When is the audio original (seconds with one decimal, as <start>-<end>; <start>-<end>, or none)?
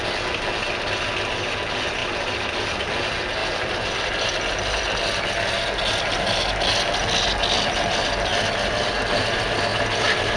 0.0-2.0; 2.8-3.4; 4.2-9.7